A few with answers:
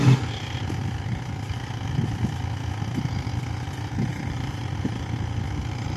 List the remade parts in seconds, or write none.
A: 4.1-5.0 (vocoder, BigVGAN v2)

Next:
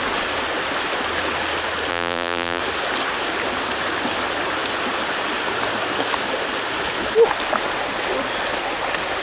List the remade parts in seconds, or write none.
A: 1.9-2.6 (vocoder, BigVGAN v2)

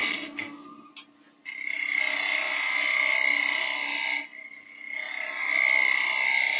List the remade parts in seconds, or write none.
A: 0.0-0.9 (codec, SNAC)